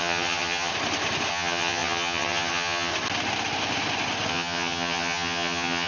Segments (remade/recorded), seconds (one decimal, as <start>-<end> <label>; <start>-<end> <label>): 0.0-0.7 remade; 0.7-1.3 recorded; 1.3-2.9 remade; 2.9-4.3 recorded; 4.3-5.9 remade